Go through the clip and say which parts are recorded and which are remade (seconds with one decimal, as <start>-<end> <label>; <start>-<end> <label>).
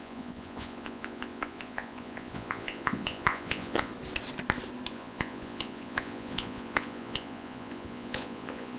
0.0-3.9 remade; 3.9-4.9 recorded; 4.9-8.8 remade